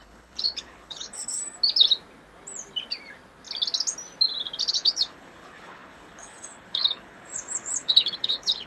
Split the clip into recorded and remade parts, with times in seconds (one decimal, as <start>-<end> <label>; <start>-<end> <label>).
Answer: 0.0-1.4 remade; 1.4-4.7 recorded; 4.7-8.7 remade